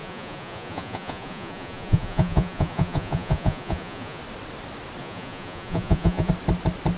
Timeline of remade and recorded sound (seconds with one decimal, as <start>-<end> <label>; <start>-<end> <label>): 0.0-4.2 remade; 4.2-5.0 recorded; 5.0-6.3 remade; 6.3-7.0 recorded